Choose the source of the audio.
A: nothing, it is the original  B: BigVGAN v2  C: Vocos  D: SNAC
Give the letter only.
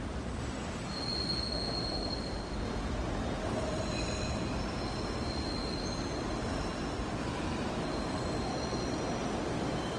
A